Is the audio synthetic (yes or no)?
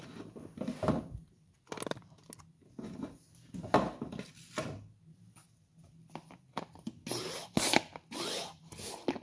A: no